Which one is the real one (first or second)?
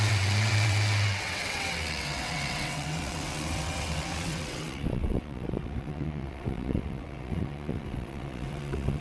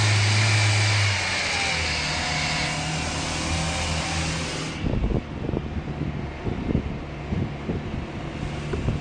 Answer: second